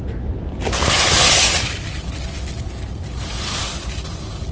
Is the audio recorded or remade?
recorded